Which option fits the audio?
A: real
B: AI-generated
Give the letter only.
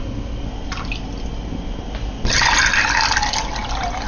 A